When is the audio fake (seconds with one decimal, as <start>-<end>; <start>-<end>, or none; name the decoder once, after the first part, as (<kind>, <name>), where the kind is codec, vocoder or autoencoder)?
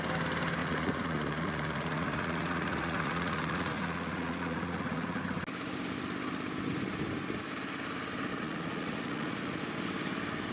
0.6-5.2 (vocoder, Vocos); 8.3-9.6